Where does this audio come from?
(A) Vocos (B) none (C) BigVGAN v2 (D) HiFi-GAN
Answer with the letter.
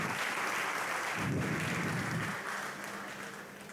B